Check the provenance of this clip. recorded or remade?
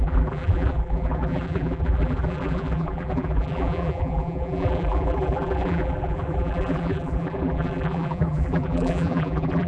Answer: remade